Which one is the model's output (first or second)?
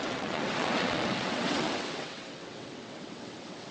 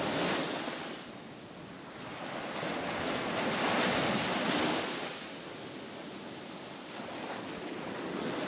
first